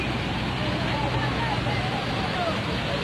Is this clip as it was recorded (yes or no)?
yes